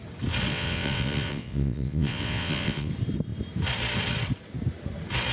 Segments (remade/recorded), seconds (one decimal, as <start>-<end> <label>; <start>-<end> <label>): 0.0-0.5 recorded; 0.5-2.9 remade; 2.9-5.3 recorded